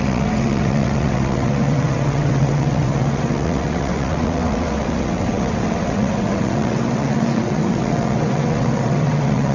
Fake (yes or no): yes